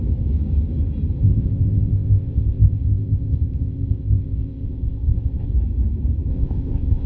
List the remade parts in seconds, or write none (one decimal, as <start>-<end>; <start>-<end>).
1.2-5.5; 6.3-7.1